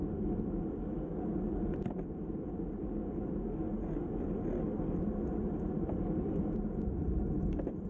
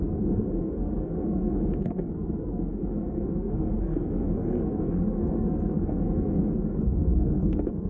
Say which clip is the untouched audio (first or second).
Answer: first